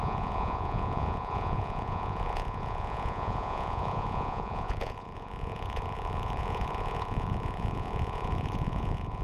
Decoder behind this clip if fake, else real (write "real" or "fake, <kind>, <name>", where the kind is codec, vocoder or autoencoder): fake, vocoder, Vocos